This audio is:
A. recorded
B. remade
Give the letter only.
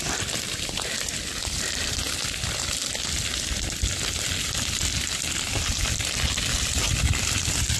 A